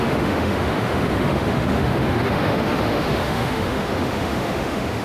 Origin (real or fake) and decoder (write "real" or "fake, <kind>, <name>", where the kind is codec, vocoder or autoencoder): fake, autoencoder, DAC-VAE